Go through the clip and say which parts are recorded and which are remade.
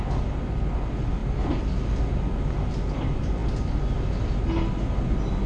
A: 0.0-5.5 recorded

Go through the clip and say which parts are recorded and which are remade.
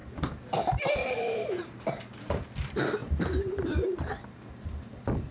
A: 0.0-2.3 remade; 2.3-3.0 recorded; 3.0-4.5 remade; 4.5-5.3 recorded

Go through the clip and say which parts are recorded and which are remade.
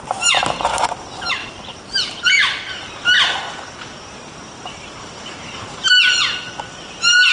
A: 0.0-1.4 recorded; 1.4-2.4 remade; 2.4-5.0 recorded; 5.0-5.9 remade; 5.9-7.3 recorded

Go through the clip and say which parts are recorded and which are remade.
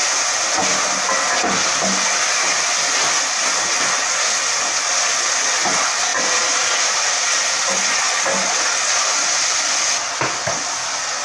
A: 0.0-6.1 recorded; 6.1-7.0 remade; 7.0-11.2 recorded